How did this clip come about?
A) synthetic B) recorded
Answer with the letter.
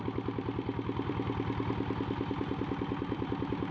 A